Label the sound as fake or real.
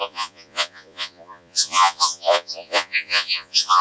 fake